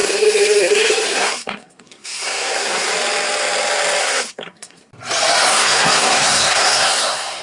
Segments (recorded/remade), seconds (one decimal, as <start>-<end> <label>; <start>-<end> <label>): 0.0-2.9 remade; 2.9-4.0 recorded; 4.0-4.9 remade; 4.9-5.5 recorded; 5.5-7.4 remade